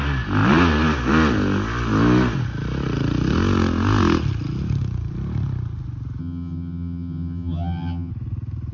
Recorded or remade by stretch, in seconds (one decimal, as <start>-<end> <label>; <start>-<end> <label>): 0.0-6.2 recorded; 6.2-8.1 remade; 8.1-8.7 recorded